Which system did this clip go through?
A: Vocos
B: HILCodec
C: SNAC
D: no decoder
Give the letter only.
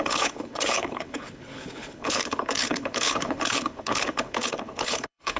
B